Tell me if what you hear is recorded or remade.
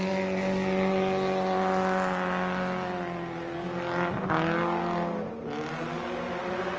recorded